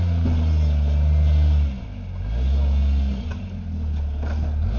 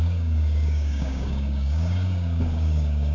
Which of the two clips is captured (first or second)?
first